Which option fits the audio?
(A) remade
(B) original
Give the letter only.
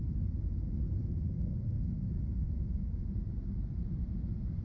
A